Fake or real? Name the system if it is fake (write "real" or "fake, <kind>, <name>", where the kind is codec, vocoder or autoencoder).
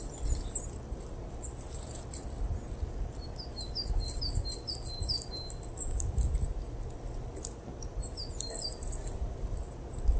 real